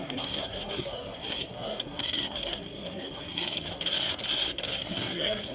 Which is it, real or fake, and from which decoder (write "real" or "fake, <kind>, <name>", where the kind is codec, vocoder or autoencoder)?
fake, codec, SNAC